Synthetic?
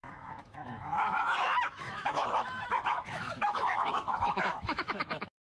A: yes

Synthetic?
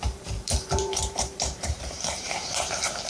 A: yes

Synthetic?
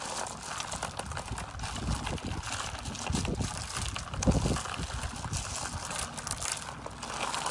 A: no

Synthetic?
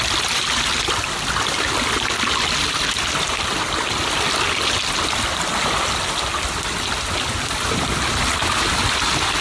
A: no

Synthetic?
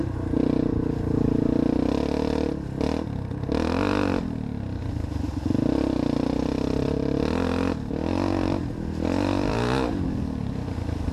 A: no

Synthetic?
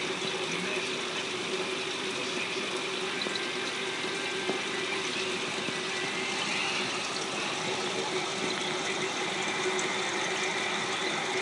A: no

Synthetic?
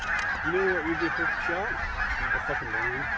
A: no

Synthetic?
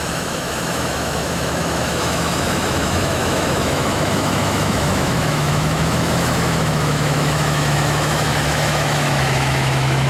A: yes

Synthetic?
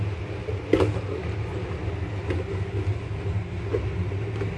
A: no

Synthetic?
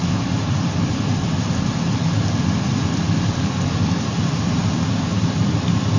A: no